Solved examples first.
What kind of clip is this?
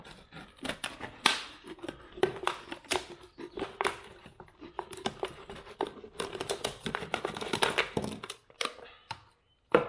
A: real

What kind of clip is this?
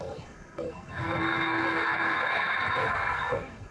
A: fake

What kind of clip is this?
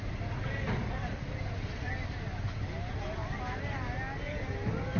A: real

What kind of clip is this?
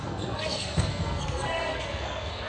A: fake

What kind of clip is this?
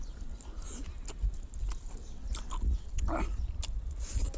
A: real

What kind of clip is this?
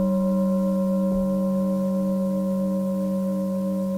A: real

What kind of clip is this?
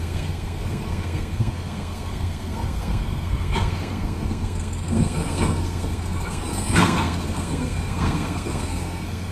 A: fake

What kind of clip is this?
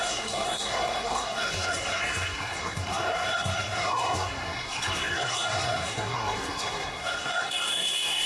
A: fake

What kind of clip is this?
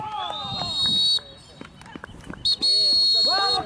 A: real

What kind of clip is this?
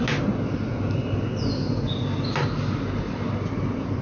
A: real